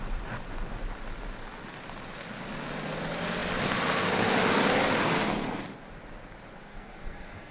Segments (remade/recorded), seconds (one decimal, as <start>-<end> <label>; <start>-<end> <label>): 0.0-6.5 recorded; 6.5-7.5 remade